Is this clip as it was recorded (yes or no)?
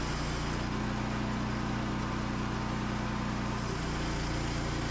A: yes